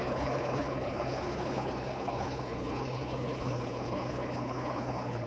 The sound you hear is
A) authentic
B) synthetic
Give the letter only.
B